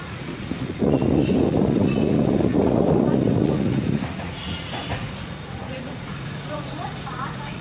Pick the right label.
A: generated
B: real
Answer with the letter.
A